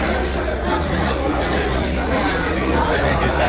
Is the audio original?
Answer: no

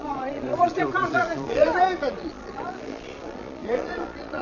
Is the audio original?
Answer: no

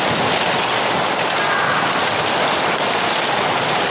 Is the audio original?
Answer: yes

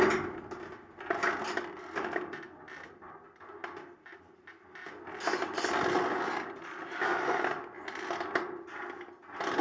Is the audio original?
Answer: yes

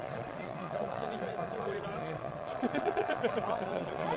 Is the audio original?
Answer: no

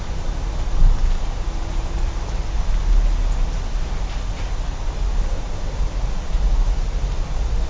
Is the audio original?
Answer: yes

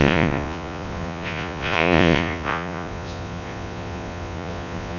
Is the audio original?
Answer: no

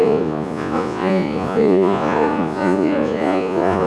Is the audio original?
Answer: no